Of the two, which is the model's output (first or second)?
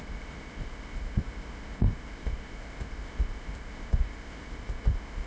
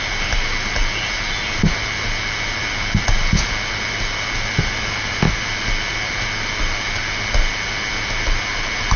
first